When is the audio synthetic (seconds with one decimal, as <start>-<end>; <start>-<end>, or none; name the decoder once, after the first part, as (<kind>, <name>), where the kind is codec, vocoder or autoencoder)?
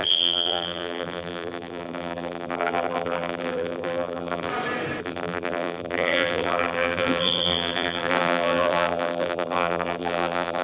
0.0-4.5 (vocoder, BigVGAN v2); 5.0-10.6